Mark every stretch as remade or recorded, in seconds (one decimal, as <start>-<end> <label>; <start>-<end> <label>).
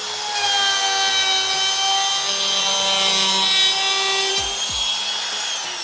0.0-5.8 recorded